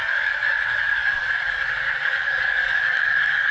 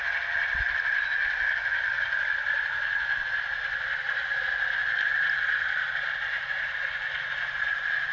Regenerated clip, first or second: first